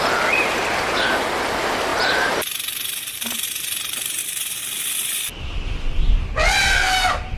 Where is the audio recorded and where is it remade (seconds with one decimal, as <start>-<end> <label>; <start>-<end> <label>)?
0.0-1.9 recorded; 1.9-4.2 remade; 4.2-7.4 recorded